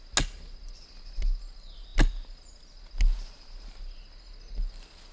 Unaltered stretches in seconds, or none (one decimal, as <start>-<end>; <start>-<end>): 0.0-5.1